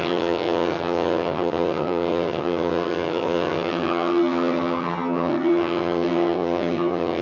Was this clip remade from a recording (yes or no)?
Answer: yes